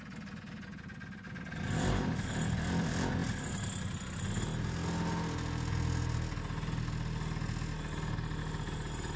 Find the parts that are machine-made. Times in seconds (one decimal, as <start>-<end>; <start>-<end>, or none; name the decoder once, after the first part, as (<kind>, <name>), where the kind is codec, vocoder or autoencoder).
none